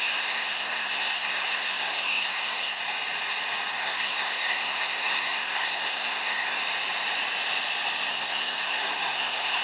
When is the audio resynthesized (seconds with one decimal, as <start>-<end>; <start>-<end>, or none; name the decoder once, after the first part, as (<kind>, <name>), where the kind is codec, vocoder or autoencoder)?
0.0-2.8 (codec, SNAC); 3.7-6.6; 8.1-9.6